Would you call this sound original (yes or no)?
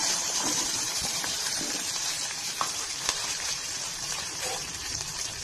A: no